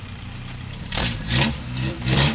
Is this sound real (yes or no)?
no